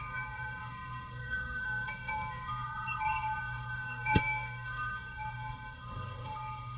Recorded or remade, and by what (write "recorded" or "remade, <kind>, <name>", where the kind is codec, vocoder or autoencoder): remade, codec, SNAC